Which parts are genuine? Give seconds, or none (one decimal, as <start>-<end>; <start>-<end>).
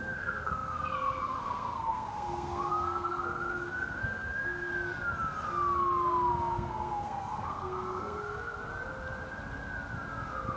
4.7-6.3; 8.6-10.6